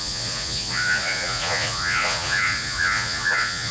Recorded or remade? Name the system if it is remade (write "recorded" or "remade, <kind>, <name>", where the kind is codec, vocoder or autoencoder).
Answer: remade, vocoder, Vocos